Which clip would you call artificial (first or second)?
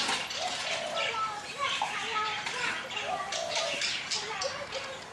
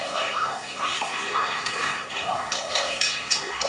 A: second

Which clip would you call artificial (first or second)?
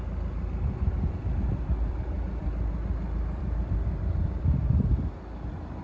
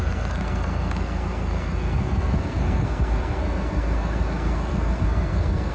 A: second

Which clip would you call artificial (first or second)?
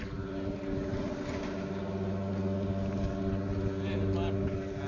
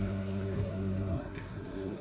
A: second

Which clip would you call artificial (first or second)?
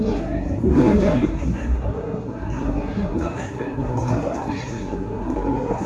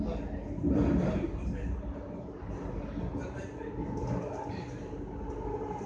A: first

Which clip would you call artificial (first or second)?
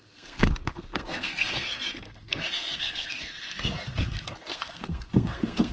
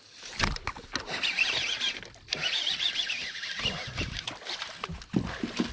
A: first